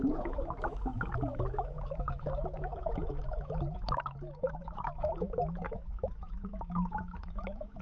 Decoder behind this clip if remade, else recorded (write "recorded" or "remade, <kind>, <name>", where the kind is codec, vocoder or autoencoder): remade, autoencoder, DAC-VAE